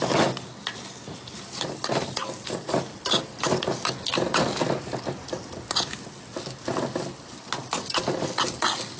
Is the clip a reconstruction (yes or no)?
no